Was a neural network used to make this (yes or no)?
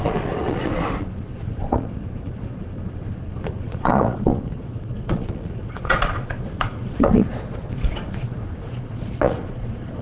yes